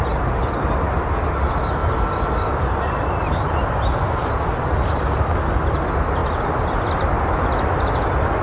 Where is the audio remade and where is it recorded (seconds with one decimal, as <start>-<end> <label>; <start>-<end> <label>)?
0.0-8.4 recorded